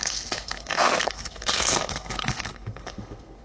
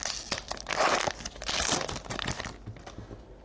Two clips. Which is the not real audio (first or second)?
first